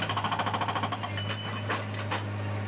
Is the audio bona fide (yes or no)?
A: yes